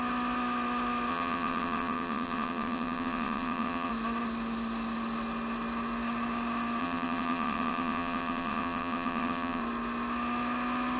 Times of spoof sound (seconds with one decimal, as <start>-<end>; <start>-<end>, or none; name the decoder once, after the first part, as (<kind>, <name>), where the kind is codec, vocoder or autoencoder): 1.1-3.9 (vocoder, WaveNeXt); 6.8-9.6